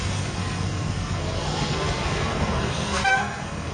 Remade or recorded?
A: remade